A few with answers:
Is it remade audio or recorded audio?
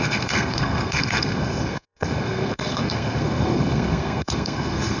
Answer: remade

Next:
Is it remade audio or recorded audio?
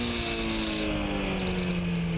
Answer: recorded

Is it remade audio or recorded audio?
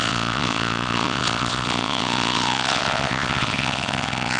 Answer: remade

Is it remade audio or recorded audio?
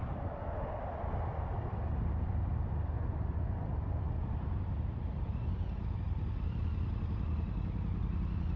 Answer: recorded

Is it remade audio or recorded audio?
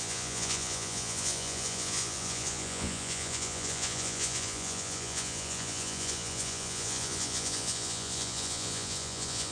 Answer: remade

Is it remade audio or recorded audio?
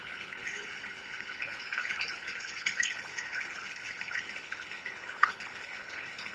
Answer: remade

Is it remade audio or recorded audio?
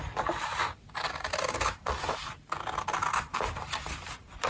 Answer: recorded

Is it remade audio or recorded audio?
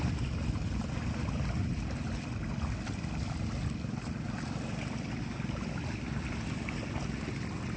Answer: recorded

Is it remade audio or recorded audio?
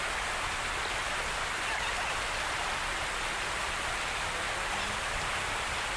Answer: recorded